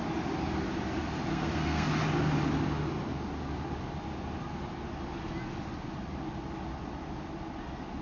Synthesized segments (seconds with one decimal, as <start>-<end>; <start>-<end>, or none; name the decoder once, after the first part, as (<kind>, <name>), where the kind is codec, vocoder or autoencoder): 1.3-1.9 (codec, SNAC)